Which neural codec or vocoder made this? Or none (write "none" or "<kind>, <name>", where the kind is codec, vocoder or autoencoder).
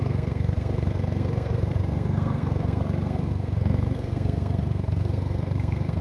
codec, SNAC